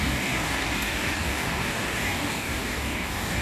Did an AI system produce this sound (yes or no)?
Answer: yes